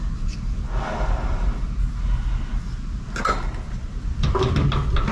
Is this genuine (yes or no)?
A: yes